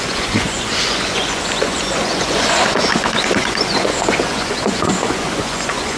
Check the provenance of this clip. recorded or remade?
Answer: remade